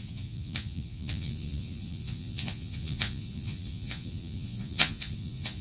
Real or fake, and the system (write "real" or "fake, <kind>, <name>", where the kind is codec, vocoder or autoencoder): fake, vocoder, Vocos